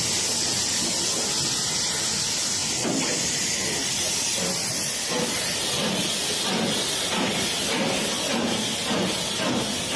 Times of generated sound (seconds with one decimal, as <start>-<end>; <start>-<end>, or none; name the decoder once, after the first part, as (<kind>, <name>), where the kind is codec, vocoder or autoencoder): none